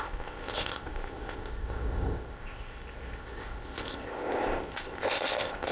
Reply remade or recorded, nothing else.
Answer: remade